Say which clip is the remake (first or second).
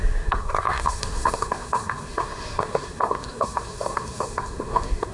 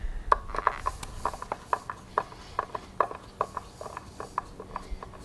first